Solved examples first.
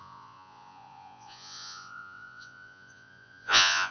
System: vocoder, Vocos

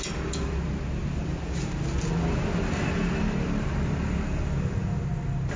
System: none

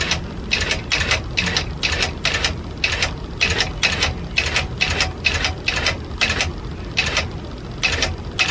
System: none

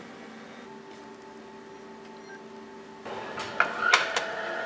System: none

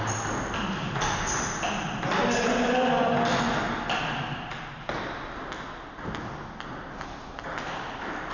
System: none